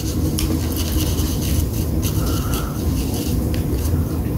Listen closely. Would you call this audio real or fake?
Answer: real